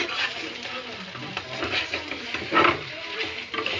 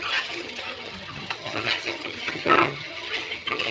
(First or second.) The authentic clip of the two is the first